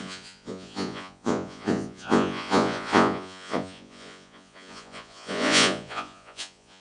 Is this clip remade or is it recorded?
remade